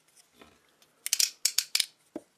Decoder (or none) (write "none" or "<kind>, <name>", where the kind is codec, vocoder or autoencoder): none